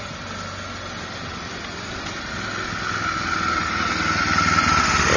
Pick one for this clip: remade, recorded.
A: recorded